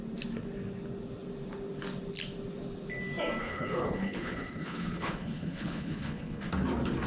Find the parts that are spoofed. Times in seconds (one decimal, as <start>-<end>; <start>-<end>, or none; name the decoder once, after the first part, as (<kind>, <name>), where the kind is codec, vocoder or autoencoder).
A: 3.4-6.4 (codec, HILCodec)